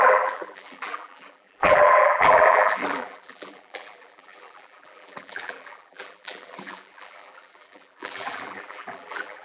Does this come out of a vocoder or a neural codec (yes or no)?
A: yes